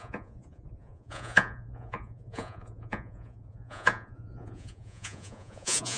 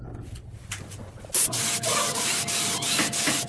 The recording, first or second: second